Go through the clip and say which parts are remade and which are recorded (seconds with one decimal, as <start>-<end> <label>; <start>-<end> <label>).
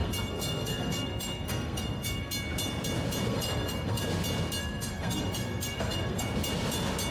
0.0-2.3 remade; 2.3-3.3 recorded; 3.3-4.0 remade; 4.0-4.6 recorded; 4.6-6.2 remade; 6.2-7.1 recorded